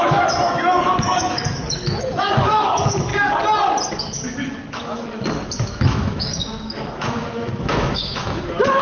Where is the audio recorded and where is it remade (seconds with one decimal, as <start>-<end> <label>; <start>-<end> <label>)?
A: 0.0-3.1 remade; 3.1-3.9 recorded; 3.9-8.8 remade